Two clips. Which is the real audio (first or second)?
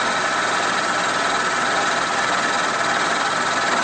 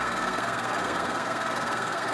first